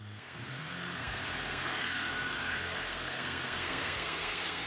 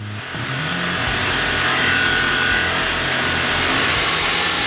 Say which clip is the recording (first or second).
second